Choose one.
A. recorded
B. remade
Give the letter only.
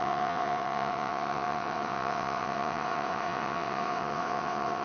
B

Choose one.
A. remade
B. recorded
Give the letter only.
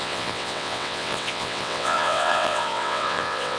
A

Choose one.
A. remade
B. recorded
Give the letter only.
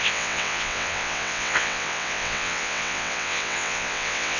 A